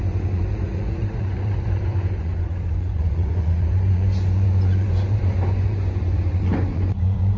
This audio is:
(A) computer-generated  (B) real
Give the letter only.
A